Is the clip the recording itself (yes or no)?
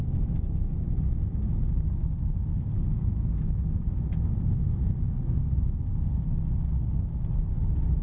yes